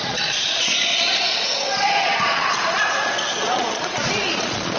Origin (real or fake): fake